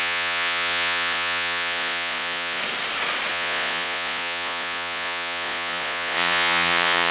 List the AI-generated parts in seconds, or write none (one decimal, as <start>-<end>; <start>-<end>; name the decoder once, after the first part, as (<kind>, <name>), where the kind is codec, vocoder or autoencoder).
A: 0.0-2.6 (vocoder, Vocos); 3.3-7.1